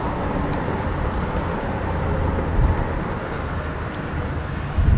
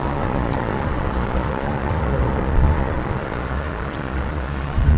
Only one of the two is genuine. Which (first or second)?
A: first